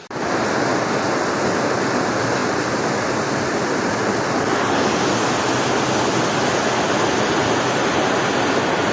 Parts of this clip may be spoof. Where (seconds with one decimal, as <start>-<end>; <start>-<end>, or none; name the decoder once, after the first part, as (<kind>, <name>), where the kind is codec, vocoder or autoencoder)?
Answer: none